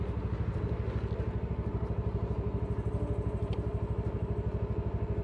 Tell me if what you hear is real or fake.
real